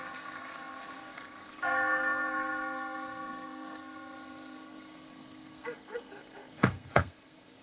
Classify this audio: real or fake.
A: fake